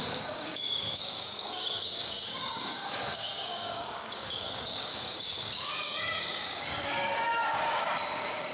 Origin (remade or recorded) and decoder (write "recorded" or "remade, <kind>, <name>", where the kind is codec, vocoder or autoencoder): remade, codec, DAC